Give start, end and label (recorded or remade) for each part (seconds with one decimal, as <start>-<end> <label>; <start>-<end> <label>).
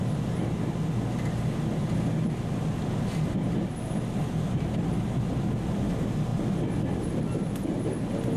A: 0.0-8.4 recorded